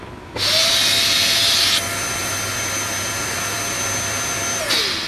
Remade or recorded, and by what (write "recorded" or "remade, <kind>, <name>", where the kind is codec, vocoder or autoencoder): recorded